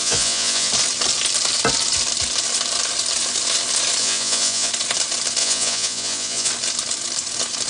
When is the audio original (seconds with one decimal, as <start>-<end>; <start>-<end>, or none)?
0.7-4.0; 4.7-5.4; 6.5-7.7